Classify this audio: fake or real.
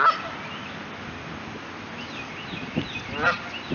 real